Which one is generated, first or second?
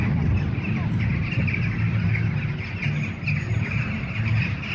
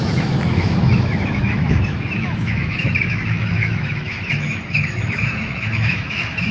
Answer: second